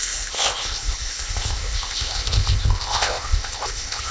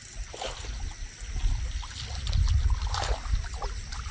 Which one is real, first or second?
second